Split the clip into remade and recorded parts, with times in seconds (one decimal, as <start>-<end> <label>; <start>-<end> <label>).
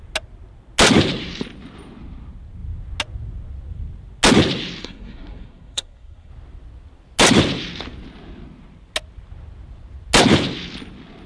0.0-4.8 recorded; 4.8-6.3 remade; 6.3-11.3 recorded